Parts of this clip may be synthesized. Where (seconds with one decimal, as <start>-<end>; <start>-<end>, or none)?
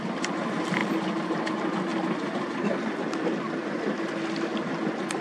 0.0-1.9; 4.8-5.2